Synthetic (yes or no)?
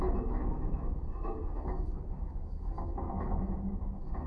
yes